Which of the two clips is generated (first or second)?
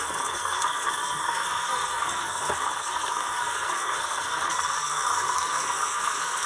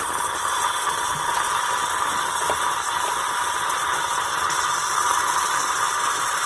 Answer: first